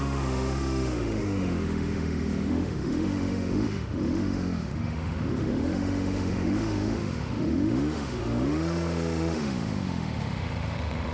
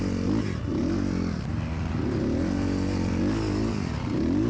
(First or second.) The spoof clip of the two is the first